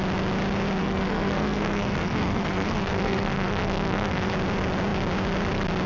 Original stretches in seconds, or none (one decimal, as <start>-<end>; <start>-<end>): 0.0-0.8; 4.3-5.9

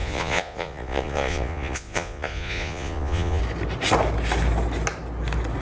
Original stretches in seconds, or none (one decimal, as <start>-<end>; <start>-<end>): 3.4-5.6

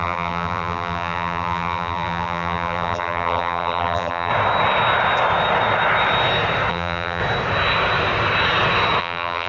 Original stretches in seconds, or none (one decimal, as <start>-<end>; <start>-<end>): 4.3-6.7; 7.2-9.0

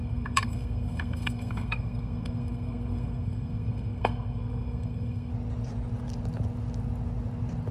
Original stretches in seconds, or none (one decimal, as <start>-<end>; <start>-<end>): 5.3-7.7

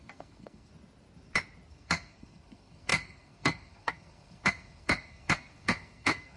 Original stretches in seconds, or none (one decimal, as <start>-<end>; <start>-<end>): 0.7-1.7

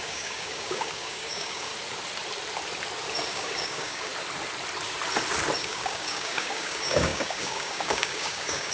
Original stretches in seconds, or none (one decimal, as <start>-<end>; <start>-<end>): 1.7-3.3; 4.1-5.6

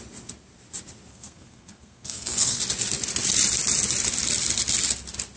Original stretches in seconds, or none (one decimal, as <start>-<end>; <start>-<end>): 0.0-1.1; 2.6-5.4